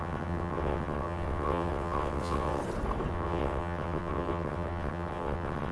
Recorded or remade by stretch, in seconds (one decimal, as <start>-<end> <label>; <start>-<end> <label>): 0.0-2.6 remade; 2.6-3.1 recorded; 3.1-5.7 remade

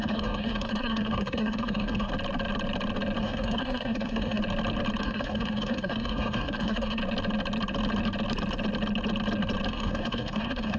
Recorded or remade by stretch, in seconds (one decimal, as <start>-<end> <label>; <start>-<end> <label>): 0.0-2.1 remade; 2.1-3.2 recorded; 3.2-4.4 remade; 4.4-5.0 recorded; 5.0-7.0 remade; 7.0-9.7 recorded; 9.7-10.8 remade

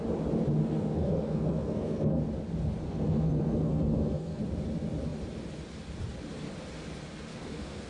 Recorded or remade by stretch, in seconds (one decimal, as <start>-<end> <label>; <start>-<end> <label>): 0.0-0.6 recorded; 0.6-2.2 remade; 2.2-2.8 recorded; 2.8-4.4 remade; 4.4-7.3 recorded; 7.3-7.9 remade